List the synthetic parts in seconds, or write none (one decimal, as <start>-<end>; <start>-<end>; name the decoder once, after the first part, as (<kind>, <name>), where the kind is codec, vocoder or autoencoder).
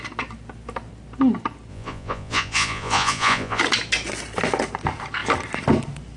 1.7-3.6 (vocoder, Vocos)